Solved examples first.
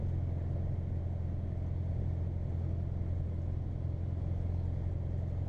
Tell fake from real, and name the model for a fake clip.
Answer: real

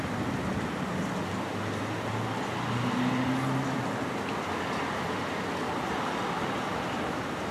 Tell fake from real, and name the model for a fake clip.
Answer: real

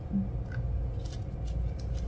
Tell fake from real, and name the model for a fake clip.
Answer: real